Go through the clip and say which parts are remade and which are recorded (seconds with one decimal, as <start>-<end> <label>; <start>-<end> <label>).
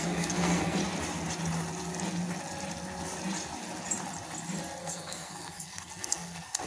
0.0-0.8 remade; 0.8-4.8 recorded; 4.8-6.7 remade